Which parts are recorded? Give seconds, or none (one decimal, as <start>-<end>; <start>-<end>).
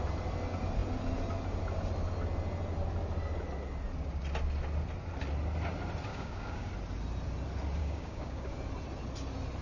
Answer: 0.0-6.1; 6.7-7.8; 8.5-9.6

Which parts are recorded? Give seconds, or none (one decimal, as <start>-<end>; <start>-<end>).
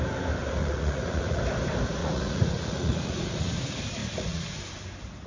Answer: 0.0-0.6; 1.4-2.0; 3.6-4.0; 4.6-5.3